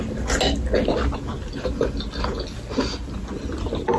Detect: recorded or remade recorded